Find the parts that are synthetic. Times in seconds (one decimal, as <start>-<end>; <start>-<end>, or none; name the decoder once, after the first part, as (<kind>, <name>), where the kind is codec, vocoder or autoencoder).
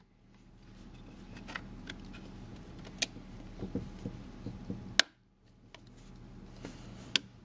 none